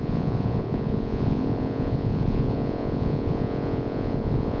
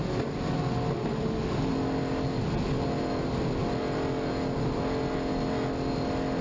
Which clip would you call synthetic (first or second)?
first